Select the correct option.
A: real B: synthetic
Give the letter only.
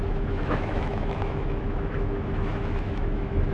B